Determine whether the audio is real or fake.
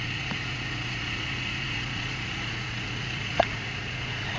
fake